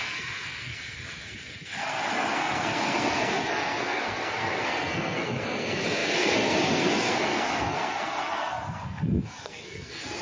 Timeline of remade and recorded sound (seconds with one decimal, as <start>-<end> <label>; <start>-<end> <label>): 0.0-10.2 remade